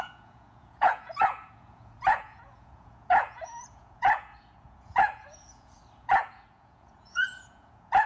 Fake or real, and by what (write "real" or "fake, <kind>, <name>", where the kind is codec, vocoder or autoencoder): fake, vocoder, Vocos